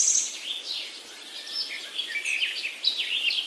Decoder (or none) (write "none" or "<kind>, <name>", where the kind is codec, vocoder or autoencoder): none